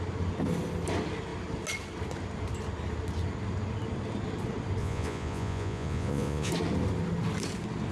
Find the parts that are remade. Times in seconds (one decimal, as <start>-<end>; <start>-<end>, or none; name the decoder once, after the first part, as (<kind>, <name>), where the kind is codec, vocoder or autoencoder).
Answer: 4.8-6.5 (vocoder, Vocos)